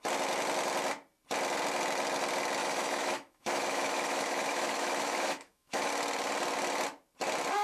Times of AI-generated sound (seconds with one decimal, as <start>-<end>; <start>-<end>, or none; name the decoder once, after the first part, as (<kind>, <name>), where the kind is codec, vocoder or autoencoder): 2.6-5.9 (autoencoder, DAC-VAE)